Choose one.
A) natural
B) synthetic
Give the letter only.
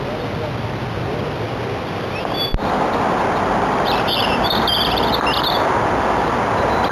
A